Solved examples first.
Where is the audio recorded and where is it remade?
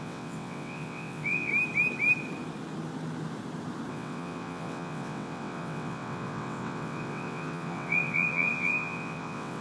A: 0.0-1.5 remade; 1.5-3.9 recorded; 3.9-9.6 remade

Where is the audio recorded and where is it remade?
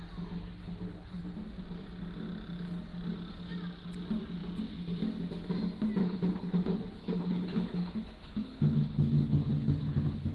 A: 0.0-0.6 recorded; 0.6-1.2 remade; 1.2-6.0 recorded; 6.0-10.3 remade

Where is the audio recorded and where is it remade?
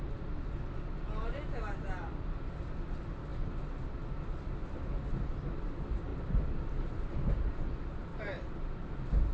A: 0.0-6.1 recorded; 6.1-7.3 remade; 7.3-8.1 recorded; 8.1-8.9 remade; 8.9-9.3 recorded